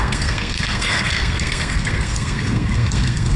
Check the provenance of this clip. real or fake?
fake